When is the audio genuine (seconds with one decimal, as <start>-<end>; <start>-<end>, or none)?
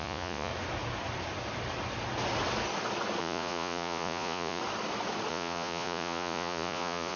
0.5-3.2; 4.6-5.3